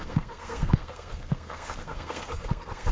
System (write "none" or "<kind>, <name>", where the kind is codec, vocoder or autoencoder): codec, SNAC